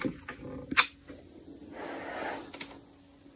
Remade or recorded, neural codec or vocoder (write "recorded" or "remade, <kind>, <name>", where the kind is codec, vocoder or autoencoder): recorded